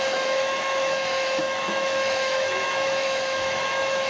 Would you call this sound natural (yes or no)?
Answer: no